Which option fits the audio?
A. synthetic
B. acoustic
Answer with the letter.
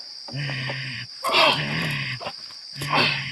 B